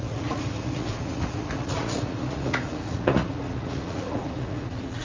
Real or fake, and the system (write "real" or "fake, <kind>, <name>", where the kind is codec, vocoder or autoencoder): fake, vocoder, Vocos